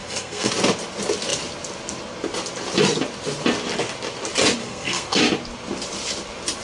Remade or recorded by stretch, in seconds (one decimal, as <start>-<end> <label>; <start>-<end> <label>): 0.0-0.5 remade; 0.5-4.6 recorded; 4.6-5.2 remade; 5.2-6.6 recorded